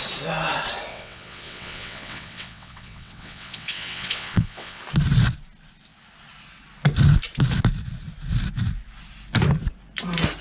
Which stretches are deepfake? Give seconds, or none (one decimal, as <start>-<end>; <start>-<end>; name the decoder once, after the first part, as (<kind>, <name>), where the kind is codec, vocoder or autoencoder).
0.9-4.8 (vocoder, WaveNeXt)